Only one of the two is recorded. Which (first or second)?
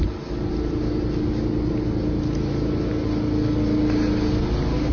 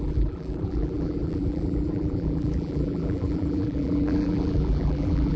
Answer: first